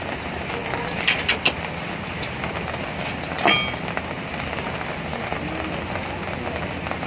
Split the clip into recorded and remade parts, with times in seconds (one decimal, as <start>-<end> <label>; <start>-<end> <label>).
0.0-7.1 recorded